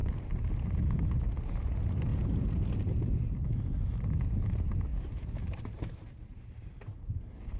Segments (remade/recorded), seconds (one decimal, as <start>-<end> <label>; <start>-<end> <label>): 0.0-2.1 recorded; 2.1-3.4 remade; 3.4-4.9 recorded; 4.9-7.6 remade